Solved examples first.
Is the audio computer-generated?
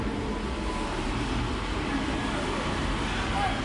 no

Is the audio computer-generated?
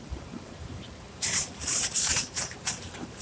yes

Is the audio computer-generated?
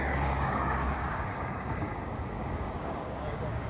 yes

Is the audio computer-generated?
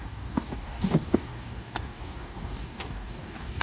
yes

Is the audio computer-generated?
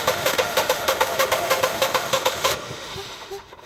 yes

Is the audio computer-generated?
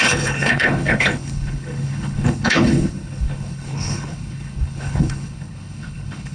yes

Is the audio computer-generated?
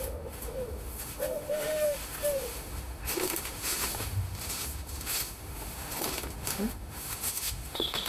yes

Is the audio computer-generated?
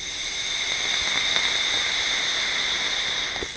no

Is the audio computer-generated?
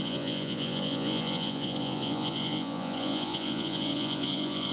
yes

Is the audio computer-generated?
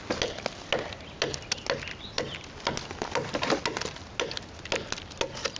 no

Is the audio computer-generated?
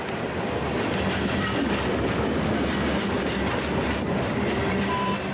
no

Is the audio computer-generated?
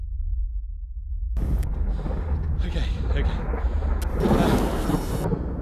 no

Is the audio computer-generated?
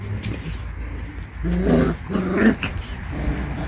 no